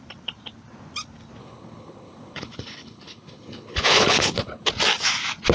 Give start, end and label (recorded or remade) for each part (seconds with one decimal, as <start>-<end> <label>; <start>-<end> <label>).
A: 0.0-1.4 recorded; 1.4-4.7 remade; 4.7-5.5 recorded